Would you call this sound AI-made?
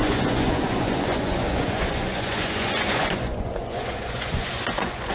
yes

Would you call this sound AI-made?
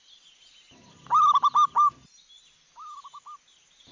no